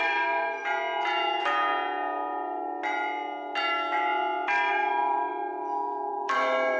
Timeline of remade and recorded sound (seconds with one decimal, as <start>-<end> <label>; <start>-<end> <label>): 0.0-0.6 remade; 0.6-4.7 recorded; 4.7-5.3 remade; 5.3-6.1 recorded; 6.1-6.8 remade